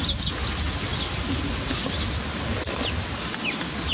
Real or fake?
real